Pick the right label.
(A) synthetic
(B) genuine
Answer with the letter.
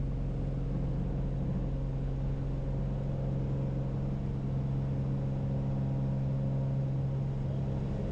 B